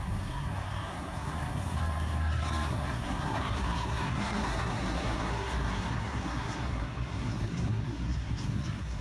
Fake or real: fake